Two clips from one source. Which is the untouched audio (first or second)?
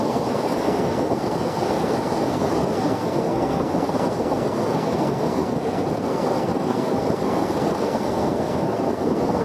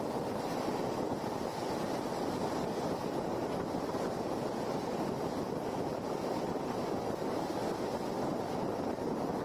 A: second